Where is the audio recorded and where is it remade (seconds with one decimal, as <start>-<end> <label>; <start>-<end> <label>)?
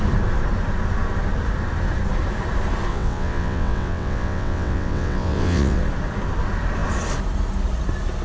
0.0-2.9 recorded; 2.9-5.8 remade; 5.8-8.2 recorded